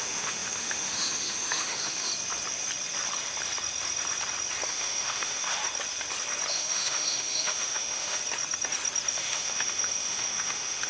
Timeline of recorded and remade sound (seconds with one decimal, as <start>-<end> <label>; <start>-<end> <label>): 0.0-2.1 remade; 2.1-4.7 recorded; 4.7-5.6 remade; 5.6-6.5 recorded; 6.5-8.2 remade; 8.2-9.1 recorded; 9.1-10.9 remade